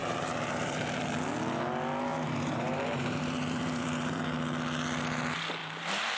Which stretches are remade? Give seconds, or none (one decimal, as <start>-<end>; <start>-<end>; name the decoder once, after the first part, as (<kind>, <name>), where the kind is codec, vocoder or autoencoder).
0.0-1.0 (vocoder, BigVGAN v2); 2.1-4.2; 5.6-6.2